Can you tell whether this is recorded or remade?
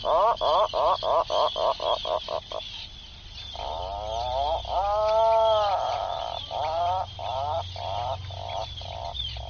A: recorded